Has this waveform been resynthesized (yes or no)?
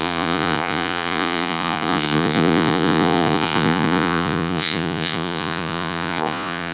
yes